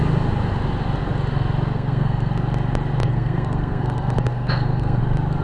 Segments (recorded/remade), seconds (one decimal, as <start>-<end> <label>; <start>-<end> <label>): 0.0-1.7 recorded; 1.7-2.3 remade; 2.3-3.0 recorded; 3.0-5.0 remade; 5.0-5.4 recorded